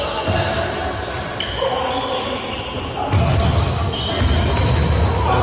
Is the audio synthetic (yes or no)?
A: no